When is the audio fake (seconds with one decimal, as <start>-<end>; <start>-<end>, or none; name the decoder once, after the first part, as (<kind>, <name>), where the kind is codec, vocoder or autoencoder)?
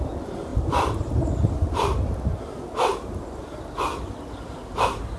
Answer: none